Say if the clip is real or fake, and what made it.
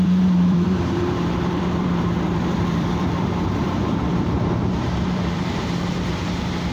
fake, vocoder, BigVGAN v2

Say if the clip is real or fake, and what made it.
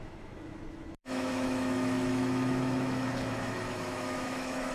fake, autoencoder, DAC-VAE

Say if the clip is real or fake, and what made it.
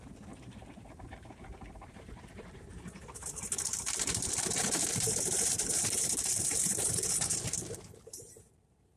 fake, vocoder, BigVGAN v2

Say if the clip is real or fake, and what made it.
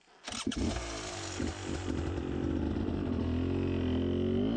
real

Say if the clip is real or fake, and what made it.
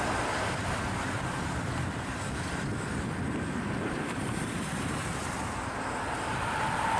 fake, vocoder, BigVGAN v2